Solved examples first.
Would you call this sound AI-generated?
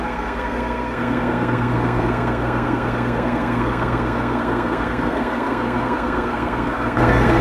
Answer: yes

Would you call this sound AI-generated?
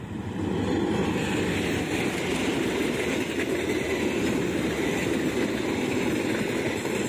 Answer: no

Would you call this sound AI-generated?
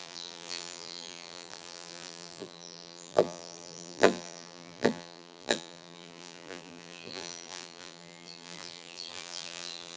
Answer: yes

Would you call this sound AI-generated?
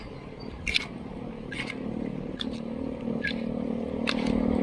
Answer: no